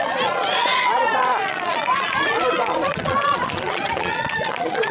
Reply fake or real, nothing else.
fake